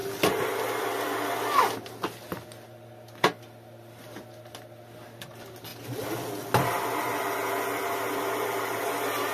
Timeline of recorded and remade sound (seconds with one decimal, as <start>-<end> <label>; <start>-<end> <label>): 0.0-9.3 recorded